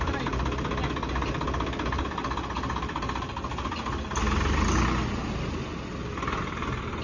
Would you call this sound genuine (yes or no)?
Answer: yes